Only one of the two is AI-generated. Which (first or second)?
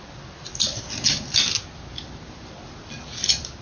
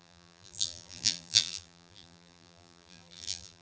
second